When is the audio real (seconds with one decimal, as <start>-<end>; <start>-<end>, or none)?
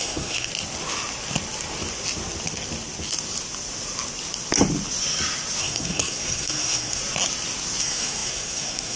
0.5-5.6; 7.0-7.8